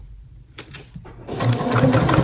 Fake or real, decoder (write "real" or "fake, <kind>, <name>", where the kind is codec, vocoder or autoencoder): real